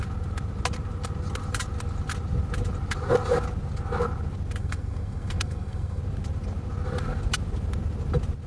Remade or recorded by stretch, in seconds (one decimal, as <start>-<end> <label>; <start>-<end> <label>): 0.0-4.6 recorded; 4.6-6.0 remade; 6.0-8.5 recorded